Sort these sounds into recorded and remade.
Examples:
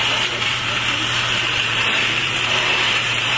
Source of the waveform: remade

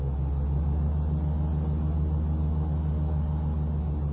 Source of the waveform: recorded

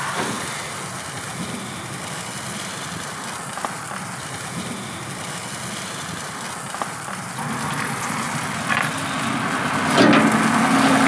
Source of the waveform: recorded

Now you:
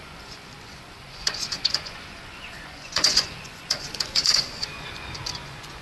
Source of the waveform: remade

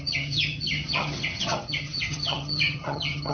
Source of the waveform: remade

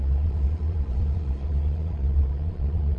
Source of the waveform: remade